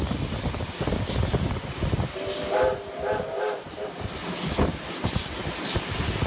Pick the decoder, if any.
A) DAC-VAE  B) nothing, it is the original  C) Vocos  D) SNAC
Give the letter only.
B